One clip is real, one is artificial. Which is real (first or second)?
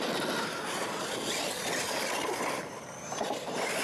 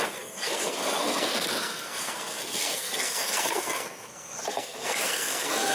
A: first